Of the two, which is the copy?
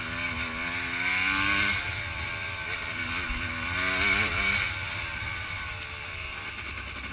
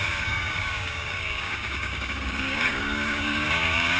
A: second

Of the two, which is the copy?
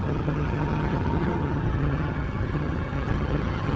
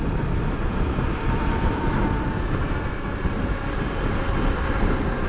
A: first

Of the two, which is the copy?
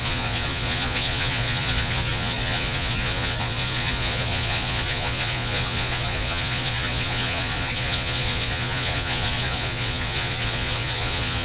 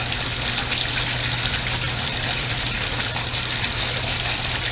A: first